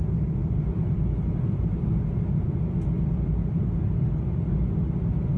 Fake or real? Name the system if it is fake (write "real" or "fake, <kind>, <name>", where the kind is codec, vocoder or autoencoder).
real